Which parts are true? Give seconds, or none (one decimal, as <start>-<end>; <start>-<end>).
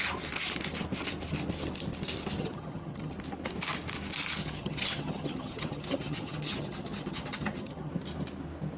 0.0-2.4; 3.1-4.4; 7.9-8.8